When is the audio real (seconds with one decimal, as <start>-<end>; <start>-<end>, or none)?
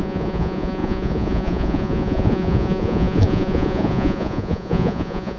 none